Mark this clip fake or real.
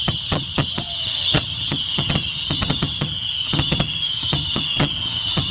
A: fake